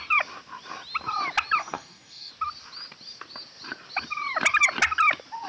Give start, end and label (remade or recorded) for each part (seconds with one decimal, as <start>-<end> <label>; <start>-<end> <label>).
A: 0.0-1.6 recorded; 1.6-2.3 remade; 2.3-5.5 recorded